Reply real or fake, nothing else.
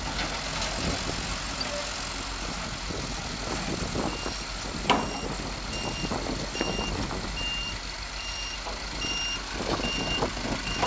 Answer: real